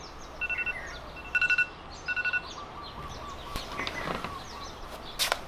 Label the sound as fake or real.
real